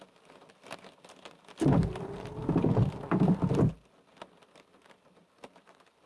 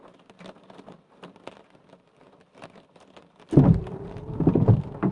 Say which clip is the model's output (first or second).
second